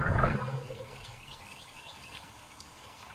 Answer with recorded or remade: remade